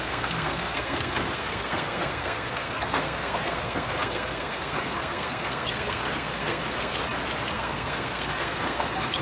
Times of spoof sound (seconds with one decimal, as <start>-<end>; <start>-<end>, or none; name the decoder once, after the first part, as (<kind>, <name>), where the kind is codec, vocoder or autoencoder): 0.0-6.9 (codec, SNAC); 7.5-9.2